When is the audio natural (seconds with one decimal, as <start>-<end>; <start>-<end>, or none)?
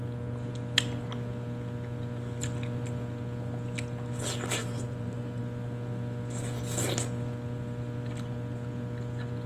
0.0-4.6; 5.4-9.5